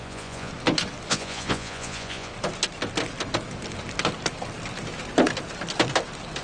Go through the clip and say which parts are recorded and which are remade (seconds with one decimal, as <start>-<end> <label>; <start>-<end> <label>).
0.0-0.5 remade; 0.5-1.1 recorded; 1.1-2.3 remade; 2.3-6.4 recorded